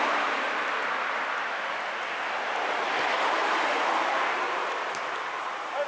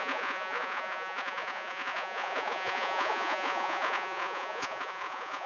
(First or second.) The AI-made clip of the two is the second